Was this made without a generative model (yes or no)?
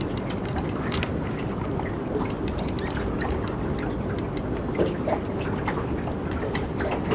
yes